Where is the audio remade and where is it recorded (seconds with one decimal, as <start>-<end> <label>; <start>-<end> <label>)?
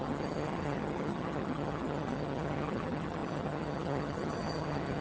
0.0-5.0 remade